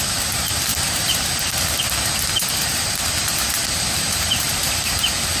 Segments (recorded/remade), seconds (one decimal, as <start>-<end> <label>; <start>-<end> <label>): 0.0-0.7 recorded; 0.7-1.8 remade; 1.8-3.6 recorded; 3.6-5.0 remade; 5.0-5.4 recorded